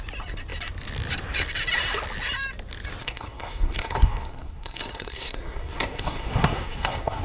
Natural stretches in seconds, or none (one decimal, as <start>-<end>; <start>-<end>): 0.0-3.0